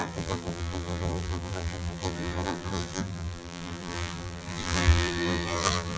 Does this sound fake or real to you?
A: fake